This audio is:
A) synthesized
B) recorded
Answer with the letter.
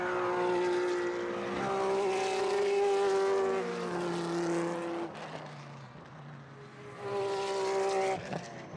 B